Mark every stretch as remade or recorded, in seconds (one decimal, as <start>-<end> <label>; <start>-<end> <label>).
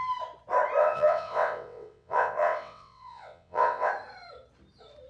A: 0.0-0.8 recorded; 0.8-3.9 remade; 3.9-5.1 recorded